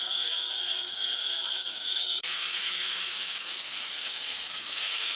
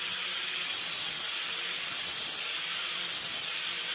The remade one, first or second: first